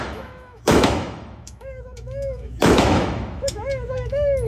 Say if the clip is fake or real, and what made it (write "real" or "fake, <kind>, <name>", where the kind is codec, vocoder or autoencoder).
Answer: fake, autoencoder, DAC-VAE